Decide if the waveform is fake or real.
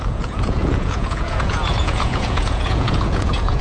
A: fake